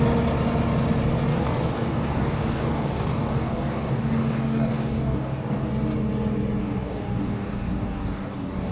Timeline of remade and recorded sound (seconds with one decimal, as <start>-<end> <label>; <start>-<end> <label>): 0.0-1.3 recorded; 1.3-5.7 remade; 5.7-6.6 recorded; 6.6-8.7 remade